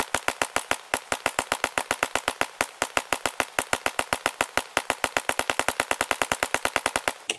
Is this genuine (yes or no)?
yes